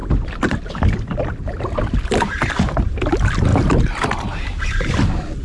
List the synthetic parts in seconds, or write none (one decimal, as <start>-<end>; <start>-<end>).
none

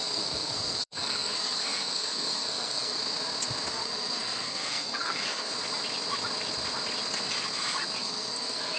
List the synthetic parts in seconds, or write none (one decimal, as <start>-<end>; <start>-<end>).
0.0-3.0; 3.7-5.5; 8.0-8.8

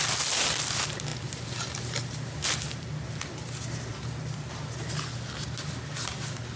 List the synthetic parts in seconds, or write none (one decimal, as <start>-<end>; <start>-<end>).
none

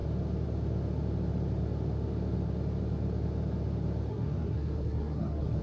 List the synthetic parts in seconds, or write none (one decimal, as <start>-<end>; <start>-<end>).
4.1-5.6

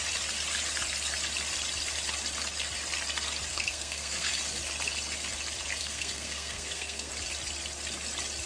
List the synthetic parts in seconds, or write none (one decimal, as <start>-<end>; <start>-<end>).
3.5-4.3; 5.8-7.1

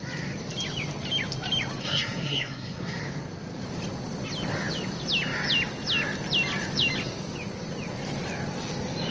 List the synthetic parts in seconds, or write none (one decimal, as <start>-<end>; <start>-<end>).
1.8-3.0

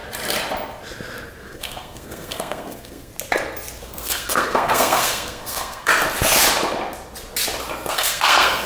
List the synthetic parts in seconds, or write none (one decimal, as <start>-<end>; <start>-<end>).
1.4-3.1; 3.8-5.9; 7.9-8.7

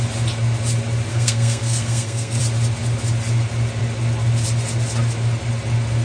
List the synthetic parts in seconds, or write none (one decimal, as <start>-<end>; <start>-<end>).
1.1-2.4